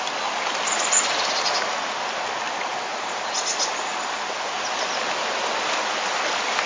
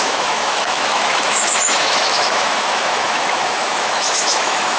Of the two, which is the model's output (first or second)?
second